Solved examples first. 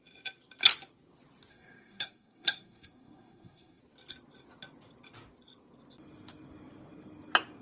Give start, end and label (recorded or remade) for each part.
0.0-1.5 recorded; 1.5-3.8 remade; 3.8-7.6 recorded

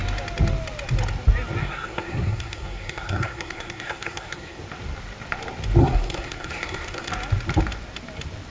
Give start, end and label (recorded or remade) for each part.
0.0-1.6 recorded; 1.6-4.6 remade; 4.6-5.8 recorded; 5.8-7.1 remade; 7.1-8.5 recorded

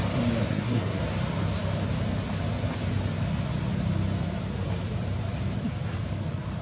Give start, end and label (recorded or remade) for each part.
0.0-0.4 recorded; 0.4-1.0 remade; 1.0-6.6 recorded

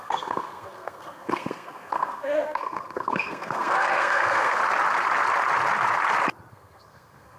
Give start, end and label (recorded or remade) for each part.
0.0-4.6 remade; 4.6-6.5 recorded; 6.5-7.4 remade

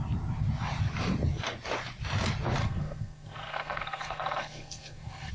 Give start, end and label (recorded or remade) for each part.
0.0-2.6 recorded; 2.6-5.3 remade

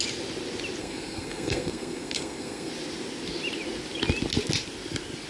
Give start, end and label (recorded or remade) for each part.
0.0-0.8 recorded; 0.8-2.7 remade; 2.7-5.3 recorded

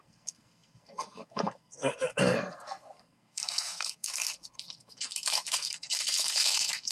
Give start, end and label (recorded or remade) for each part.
0.0-6.9 remade